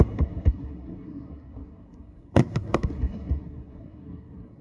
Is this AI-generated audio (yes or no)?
yes